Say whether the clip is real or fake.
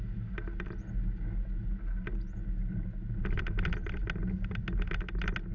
real